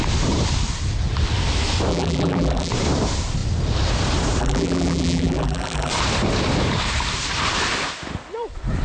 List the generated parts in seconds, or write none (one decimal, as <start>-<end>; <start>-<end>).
1.9-2.7; 4.4-5.9